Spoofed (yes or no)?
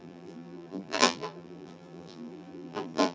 yes